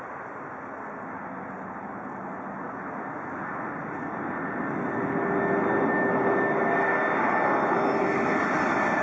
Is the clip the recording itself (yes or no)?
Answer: yes